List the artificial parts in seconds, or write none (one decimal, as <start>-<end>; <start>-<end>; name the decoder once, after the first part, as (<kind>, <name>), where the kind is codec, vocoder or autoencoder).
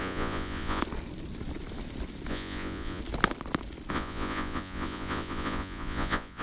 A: 0.0-0.8 (vocoder, Vocos); 2.3-3.0; 3.9-6.4